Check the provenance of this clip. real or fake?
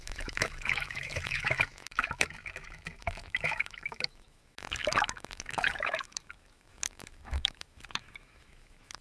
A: fake